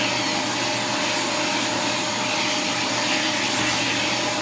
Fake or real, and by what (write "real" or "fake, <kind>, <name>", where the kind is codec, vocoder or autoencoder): real